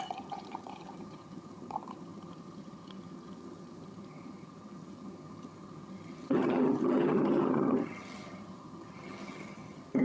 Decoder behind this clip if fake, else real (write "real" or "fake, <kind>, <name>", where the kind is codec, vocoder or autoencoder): fake, vocoder, HiFi-GAN